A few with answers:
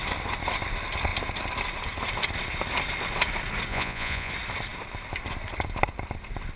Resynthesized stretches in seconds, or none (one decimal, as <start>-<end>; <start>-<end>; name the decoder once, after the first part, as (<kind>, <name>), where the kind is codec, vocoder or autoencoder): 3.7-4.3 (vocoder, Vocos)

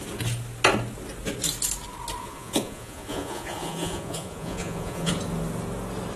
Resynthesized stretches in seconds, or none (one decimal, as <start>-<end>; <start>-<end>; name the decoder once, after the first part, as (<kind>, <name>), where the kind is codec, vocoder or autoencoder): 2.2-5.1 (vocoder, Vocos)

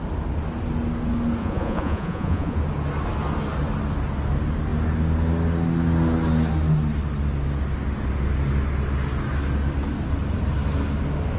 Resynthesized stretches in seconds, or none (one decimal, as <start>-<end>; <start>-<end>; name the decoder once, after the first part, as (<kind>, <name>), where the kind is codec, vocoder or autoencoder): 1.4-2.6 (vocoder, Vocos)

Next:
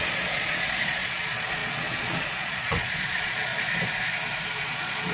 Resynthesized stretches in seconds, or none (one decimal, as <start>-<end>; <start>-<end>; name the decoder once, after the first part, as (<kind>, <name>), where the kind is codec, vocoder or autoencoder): 0.0-3.5 (vocoder, Vocos); 4.6-5.1

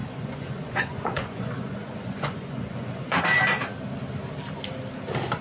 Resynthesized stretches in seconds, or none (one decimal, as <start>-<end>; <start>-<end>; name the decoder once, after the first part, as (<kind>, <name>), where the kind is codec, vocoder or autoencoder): 0.0-3.2 (vocoder, Vocos)